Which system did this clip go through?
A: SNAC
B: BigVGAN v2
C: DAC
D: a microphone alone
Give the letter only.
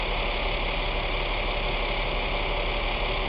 D